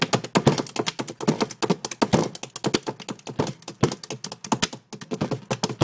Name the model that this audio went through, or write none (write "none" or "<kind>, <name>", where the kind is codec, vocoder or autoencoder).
none